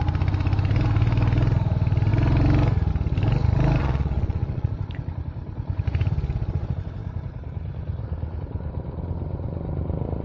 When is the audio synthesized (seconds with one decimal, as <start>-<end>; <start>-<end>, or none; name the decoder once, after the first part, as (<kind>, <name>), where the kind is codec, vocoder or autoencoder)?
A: 3.8-4.7 (vocoder, Vocos)